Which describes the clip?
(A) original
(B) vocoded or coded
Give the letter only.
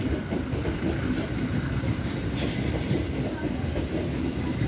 B